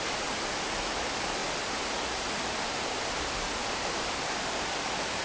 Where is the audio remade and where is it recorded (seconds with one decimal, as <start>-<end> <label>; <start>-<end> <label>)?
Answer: 0.0-1.4 remade; 1.4-3.1 recorded; 3.1-5.2 remade